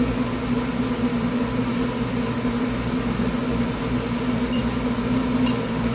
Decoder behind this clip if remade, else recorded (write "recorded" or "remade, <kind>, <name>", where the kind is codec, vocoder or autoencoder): recorded